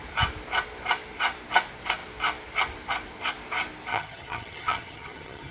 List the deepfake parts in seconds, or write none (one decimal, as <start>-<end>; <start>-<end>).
3.9-5.5